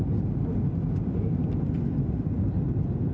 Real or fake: real